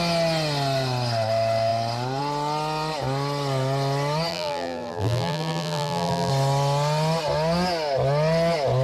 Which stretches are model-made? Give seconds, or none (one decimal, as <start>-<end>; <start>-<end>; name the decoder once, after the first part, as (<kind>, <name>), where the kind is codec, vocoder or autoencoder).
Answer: 4.3-6.3 (vocoder, BigVGAN v2)